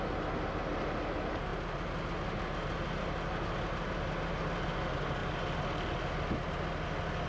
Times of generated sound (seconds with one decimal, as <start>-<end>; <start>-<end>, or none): none